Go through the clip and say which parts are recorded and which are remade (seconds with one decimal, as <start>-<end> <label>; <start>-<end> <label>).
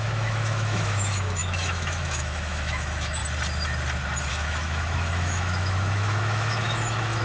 0.0-3.2 remade; 3.2-4.3 recorded; 4.3-7.2 remade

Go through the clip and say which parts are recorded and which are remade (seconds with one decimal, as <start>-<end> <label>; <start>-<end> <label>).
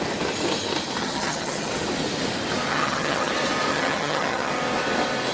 0.0-1.0 recorded; 1.0-1.7 remade; 1.7-2.7 recorded; 2.7-3.3 remade; 3.3-3.7 recorded; 3.7-4.5 remade; 4.5-5.3 recorded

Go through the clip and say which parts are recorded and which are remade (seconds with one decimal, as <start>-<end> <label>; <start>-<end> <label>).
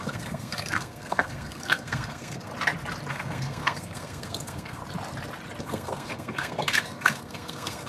0.0-2.5 remade; 2.5-3.1 recorded; 3.1-4.8 remade; 4.8-5.6 recorded; 5.6-7.9 remade